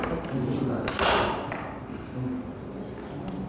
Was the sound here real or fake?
real